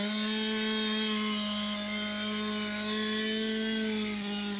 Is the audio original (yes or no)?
yes